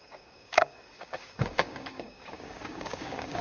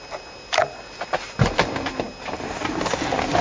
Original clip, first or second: second